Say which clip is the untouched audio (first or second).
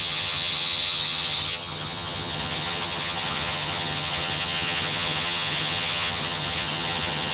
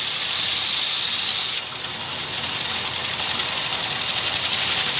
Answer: second